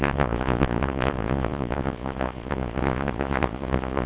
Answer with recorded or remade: remade